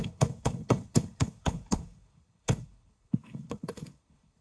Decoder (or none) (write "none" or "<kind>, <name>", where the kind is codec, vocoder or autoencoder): codec, HILCodec